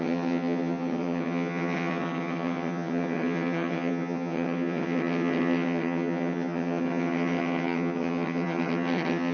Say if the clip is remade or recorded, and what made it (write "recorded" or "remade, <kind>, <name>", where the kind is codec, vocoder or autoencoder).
remade, vocoder, HiFi-GAN